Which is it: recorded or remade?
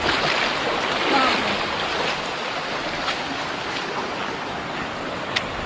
recorded